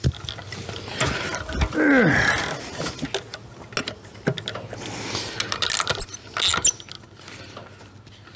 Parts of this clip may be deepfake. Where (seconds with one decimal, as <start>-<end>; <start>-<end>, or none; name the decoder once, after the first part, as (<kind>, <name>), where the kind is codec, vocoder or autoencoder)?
none